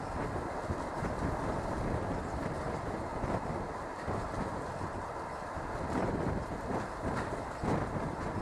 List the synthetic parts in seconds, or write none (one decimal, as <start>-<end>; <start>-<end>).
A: none